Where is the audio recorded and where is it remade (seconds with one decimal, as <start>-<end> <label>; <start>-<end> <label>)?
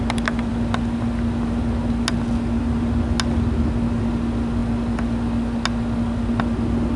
0.0-7.0 recorded